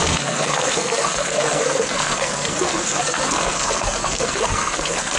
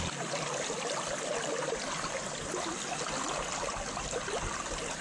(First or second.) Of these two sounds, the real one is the second